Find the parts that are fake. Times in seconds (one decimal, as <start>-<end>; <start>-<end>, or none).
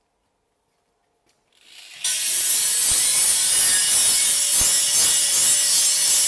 none